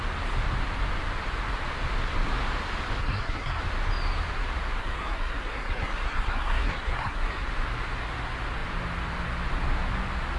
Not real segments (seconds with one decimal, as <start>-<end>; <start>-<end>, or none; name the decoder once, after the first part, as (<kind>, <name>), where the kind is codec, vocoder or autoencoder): 3.0-3.6 (codec, SNAC); 4.8-7.5